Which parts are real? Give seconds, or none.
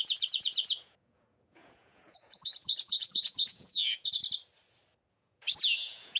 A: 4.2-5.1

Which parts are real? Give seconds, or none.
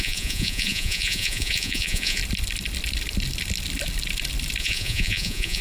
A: 2.2-4.6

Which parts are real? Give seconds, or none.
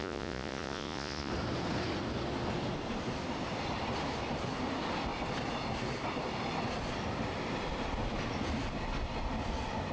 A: 1.3-9.9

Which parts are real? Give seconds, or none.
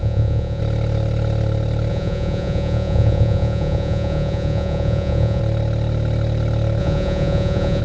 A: 0.6-1.9; 5.4-6.8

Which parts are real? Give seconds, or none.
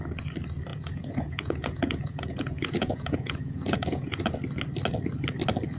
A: 0.0-0.7; 4.2-5.8